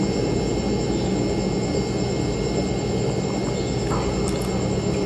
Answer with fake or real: real